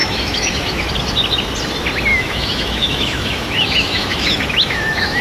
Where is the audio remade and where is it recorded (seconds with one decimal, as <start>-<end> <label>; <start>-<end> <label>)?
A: 0.0-0.9 remade; 0.9-2.1 recorded; 2.1-5.2 remade